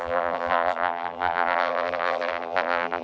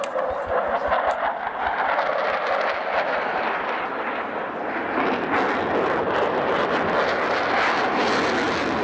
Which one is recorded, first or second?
second